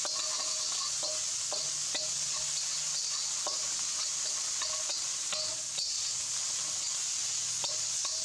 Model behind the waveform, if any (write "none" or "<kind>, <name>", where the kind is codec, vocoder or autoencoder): none